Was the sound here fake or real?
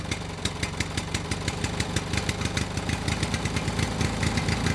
real